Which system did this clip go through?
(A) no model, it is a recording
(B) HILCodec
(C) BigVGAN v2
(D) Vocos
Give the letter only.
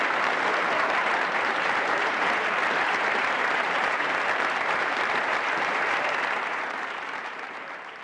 C